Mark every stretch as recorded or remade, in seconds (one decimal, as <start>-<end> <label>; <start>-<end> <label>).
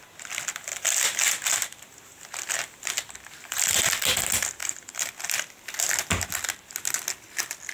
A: 0.0-0.7 recorded; 0.7-1.2 remade; 1.2-4.6 recorded; 4.6-5.1 remade; 5.1-7.7 recorded